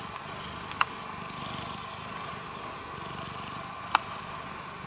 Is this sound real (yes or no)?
yes